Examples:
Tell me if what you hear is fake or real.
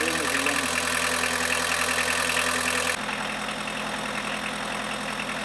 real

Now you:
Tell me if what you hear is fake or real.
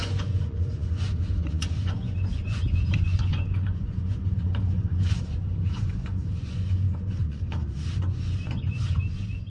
fake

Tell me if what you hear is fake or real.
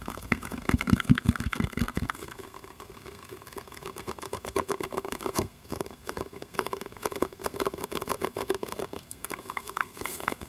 fake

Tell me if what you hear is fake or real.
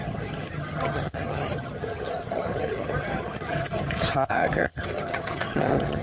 fake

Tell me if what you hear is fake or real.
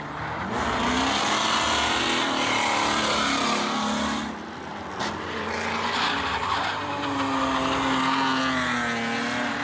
real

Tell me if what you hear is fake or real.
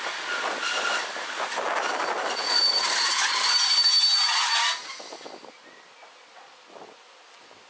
real